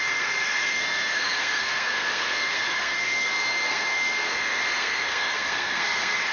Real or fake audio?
fake